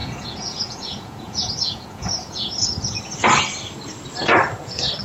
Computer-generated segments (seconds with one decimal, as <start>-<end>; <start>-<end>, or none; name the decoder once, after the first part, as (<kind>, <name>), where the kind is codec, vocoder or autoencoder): 0.0-3.0 (vocoder, Vocos)